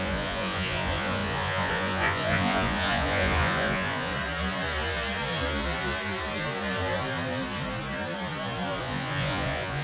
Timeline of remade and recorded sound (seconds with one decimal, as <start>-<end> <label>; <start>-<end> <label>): 0.0-4.1 remade; 4.1-8.8 recorded; 8.8-9.8 remade